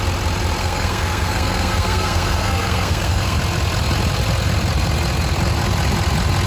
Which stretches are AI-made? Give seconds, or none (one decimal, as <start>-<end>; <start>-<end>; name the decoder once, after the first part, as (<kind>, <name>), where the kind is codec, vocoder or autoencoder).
0.6-3.4 (codec, SNAC)